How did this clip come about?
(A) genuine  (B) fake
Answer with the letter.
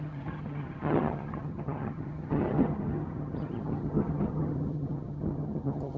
B